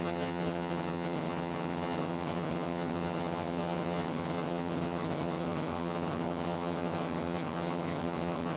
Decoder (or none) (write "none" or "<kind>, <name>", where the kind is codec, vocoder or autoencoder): vocoder, HiFi-GAN